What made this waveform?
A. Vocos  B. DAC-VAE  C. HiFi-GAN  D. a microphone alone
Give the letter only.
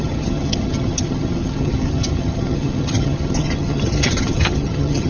C